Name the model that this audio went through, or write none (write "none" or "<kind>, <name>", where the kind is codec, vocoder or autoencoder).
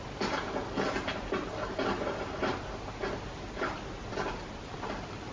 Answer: none